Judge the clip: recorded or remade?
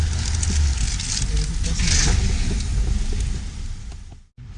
recorded